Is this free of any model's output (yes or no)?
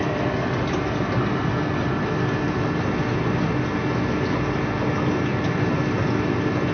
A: yes